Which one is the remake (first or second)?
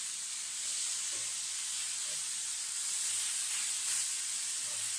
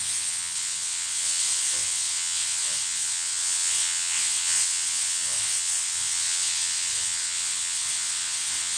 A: second